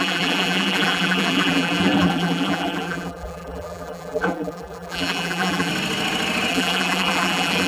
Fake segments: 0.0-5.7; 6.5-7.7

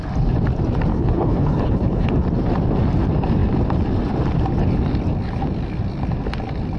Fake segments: 0.9-2.1